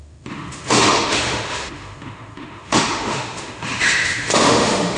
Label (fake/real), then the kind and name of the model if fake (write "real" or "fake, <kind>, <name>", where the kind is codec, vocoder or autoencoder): fake, autoencoder, DAC-VAE